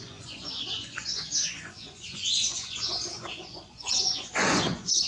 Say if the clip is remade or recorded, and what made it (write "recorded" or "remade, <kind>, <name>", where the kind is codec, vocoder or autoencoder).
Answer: remade, vocoder, Vocos